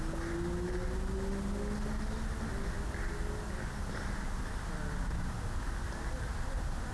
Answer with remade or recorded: recorded